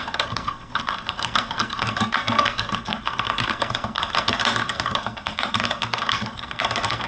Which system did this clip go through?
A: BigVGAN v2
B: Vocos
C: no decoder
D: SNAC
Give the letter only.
D